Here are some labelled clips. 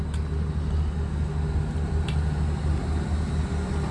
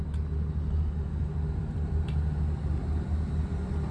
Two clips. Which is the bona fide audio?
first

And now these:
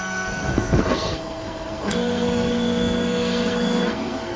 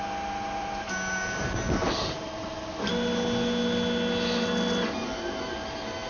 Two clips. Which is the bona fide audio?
second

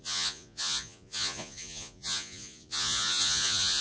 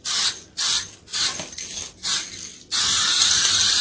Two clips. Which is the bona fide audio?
second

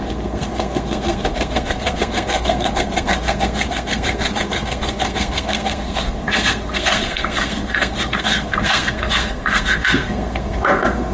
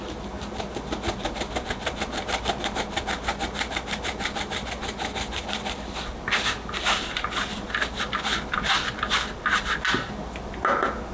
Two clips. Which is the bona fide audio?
second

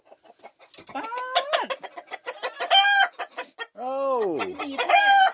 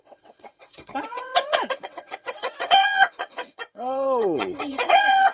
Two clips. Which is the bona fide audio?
first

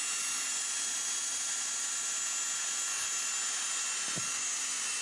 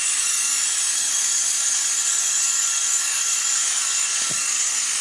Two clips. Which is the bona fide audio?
first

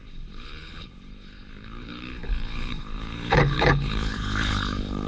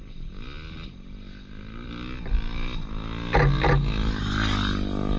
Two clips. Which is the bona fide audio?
second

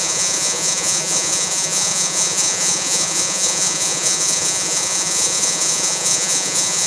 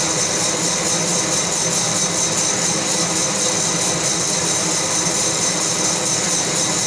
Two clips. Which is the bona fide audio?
second